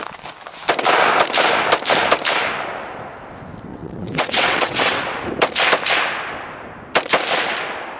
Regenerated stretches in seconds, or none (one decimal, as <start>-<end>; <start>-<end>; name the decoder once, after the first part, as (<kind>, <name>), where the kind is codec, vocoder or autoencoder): 3.7-5.0 (vocoder, WaveNeXt)